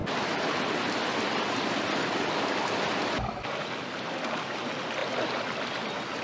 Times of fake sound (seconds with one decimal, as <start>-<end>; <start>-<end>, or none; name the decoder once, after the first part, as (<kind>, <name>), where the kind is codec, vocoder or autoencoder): none